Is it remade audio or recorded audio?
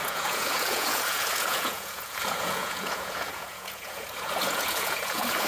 remade